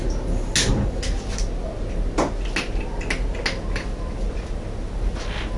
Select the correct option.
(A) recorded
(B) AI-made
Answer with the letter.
A